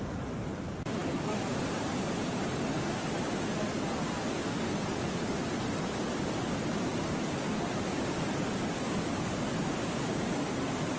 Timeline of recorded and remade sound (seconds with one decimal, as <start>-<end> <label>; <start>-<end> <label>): 0.0-11.0 recorded